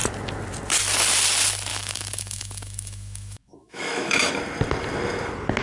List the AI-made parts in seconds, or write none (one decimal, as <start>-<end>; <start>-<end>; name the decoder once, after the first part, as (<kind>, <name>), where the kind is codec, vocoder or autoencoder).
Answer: 1.7-4.3 (autoencoder, DAC-VAE)